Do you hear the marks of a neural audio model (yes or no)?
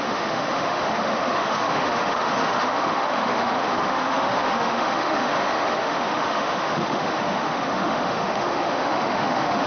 yes